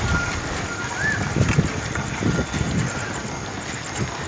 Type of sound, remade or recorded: recorded